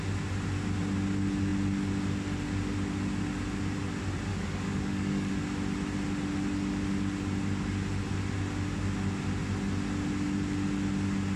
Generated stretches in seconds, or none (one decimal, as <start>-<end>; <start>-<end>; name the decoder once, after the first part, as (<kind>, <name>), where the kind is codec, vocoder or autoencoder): 4.3-5.3 (codec, DAC)